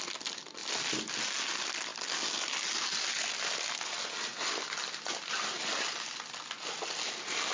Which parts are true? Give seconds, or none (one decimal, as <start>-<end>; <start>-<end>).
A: 0.0-7.5